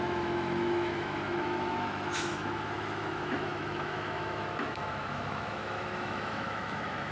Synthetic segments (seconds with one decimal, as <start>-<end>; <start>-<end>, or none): 0.0-7.1